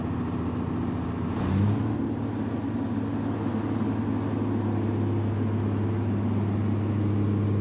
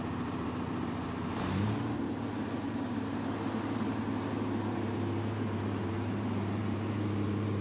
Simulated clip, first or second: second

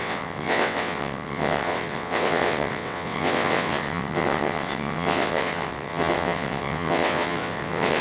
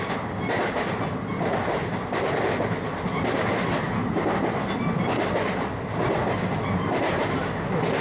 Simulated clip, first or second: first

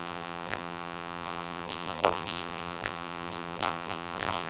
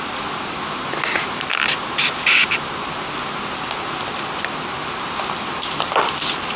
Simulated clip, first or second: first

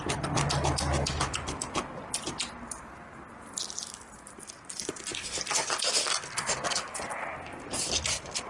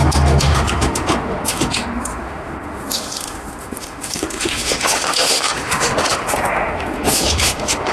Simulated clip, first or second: second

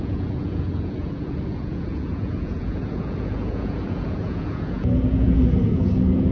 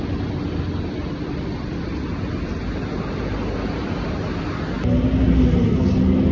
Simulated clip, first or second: first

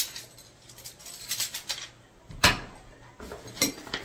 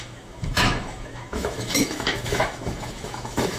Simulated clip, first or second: second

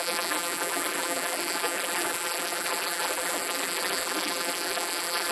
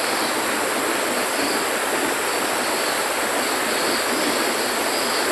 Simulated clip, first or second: first